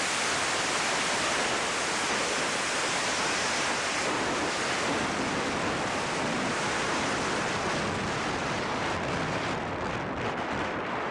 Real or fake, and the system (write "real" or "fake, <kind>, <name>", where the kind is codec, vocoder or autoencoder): real